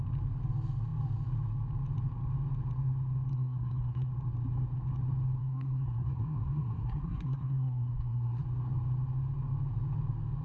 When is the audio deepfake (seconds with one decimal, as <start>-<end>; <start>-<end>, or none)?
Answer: 3.3-4.1; 5.4-8.4